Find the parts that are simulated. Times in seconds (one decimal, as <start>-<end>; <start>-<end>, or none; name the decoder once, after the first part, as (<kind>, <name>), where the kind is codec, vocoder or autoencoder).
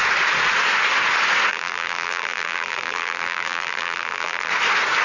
1.5-4.5 (vocoder, BigVGAN v2)